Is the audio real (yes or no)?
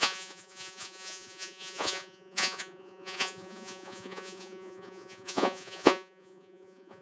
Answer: no